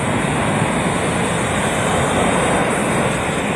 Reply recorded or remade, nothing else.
recorded